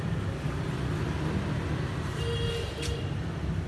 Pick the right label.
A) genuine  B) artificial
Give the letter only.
A